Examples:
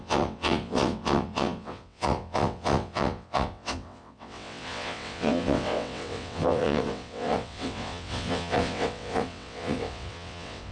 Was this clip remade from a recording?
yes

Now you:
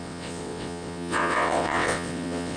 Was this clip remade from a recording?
yes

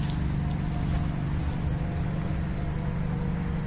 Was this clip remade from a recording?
no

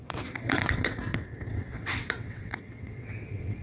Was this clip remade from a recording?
yes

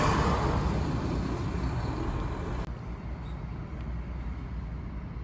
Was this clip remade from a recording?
no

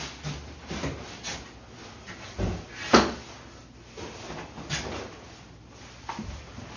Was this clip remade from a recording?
no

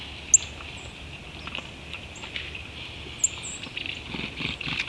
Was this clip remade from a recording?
no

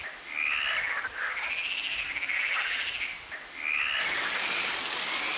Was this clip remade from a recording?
no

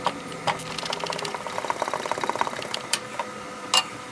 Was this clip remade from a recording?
no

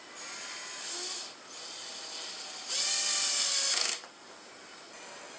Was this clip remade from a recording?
no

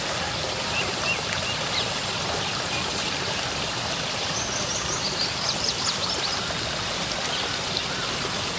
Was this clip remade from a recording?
no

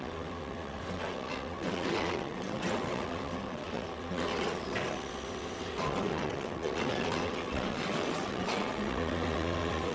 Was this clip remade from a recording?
yes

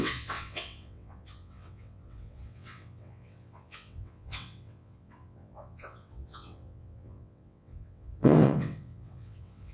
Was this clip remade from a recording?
yes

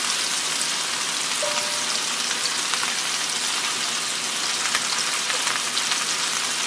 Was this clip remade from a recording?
no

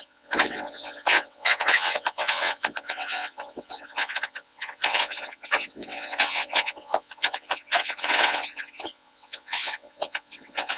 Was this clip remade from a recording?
yes